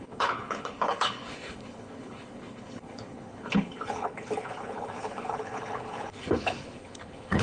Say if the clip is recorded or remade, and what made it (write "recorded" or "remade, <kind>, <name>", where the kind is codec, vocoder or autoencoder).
remade, codec, HILCodec